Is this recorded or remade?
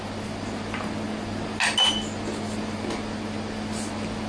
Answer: recorded